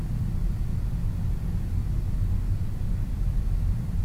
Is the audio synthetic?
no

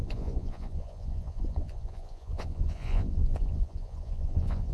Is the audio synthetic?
yes